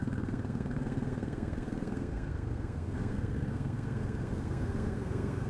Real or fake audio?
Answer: fake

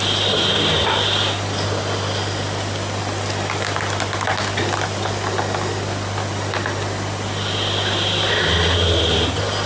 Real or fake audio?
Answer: real